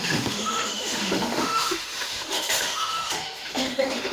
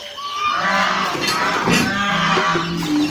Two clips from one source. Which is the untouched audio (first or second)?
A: second